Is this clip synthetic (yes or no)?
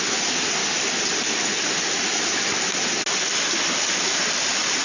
no